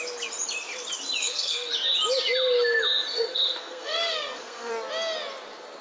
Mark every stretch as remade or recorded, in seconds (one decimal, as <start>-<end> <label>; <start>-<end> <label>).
0.0-1.2 recorded; 1.2-1.7 remade; 1.7-3.1 recorded; 3.1-4.7 remade; 4.7-5.8 recorded